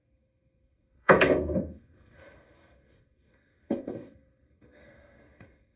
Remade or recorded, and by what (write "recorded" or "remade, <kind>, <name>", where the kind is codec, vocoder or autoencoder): remade, codec, SNAC